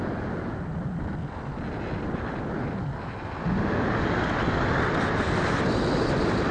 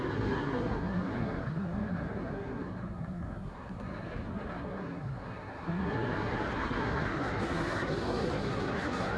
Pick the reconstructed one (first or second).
second